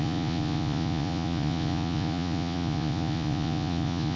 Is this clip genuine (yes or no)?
no